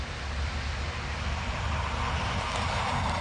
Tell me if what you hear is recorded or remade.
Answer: remade